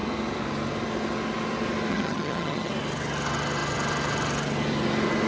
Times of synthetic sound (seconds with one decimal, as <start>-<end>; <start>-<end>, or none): 1.9-2.7